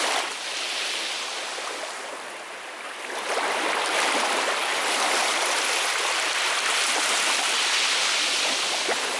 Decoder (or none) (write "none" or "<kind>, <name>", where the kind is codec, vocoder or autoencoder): none